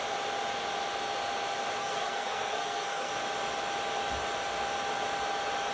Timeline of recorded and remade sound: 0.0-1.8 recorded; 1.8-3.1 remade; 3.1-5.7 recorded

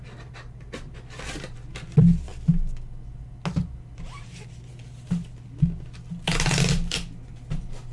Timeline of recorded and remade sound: 0.0-7.9 recorded